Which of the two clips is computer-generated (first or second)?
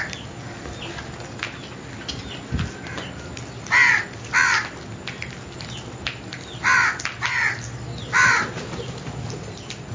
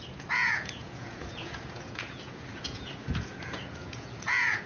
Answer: second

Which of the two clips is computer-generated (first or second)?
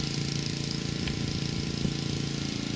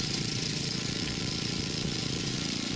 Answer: second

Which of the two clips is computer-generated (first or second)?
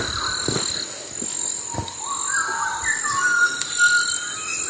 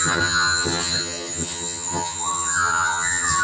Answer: second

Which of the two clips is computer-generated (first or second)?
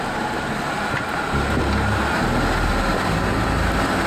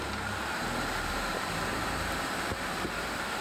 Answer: second